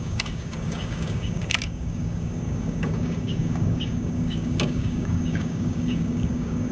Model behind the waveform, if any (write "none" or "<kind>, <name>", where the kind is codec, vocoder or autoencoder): codec, DAC